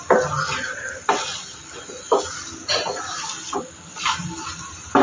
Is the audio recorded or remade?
recorded